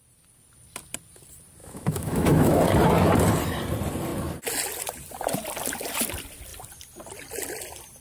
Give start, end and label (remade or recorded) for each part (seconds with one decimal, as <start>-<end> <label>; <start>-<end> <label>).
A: 0.0-1.6 recorded; 1.6-2.6 remade; 2.6-8.0 recorded